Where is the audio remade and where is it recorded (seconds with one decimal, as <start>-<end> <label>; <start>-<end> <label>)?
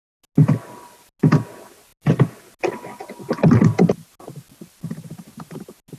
0.0-6.0 recorded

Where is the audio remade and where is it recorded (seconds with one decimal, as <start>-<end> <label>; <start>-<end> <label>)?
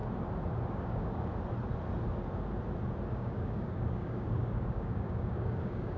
0.0-0.7 recorded; 0.7-1.3 remade; 1.3-3.1 recorded; 3.1-6.0 remade